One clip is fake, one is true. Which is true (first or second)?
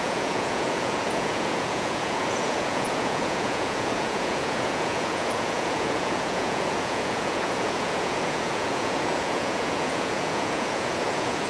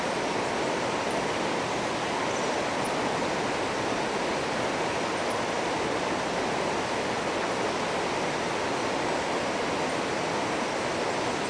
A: second